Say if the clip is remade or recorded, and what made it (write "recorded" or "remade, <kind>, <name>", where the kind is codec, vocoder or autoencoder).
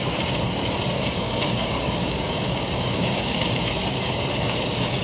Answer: remade, codec, DAC